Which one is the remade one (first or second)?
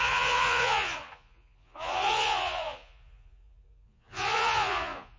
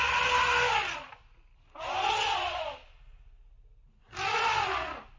first